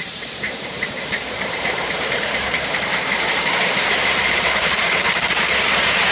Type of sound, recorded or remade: remade